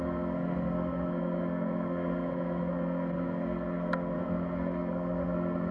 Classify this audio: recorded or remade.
remade